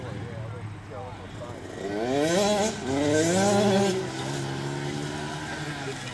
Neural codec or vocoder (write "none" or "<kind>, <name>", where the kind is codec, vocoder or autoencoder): none